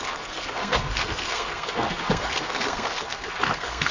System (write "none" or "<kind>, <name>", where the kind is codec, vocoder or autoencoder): codec, SNAC